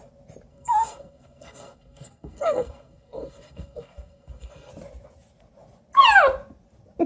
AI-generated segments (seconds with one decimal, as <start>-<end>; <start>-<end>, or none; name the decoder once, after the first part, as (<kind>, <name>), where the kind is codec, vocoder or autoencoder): 0.5-4.7 (codec, SNAC)